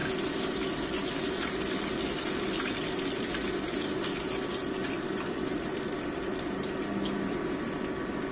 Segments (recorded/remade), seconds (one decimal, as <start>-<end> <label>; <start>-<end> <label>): 0.0-8.3 recorded

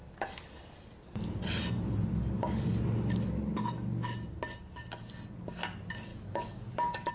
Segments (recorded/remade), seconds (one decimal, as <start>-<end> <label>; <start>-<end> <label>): 0.0-6.1 recorded; 6.1-7.1 remade

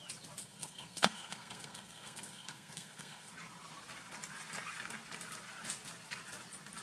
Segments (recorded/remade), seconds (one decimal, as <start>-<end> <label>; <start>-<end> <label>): 0.0-0.4 recorded; 0.4-3.3 remade; 3.3-6.8 recorded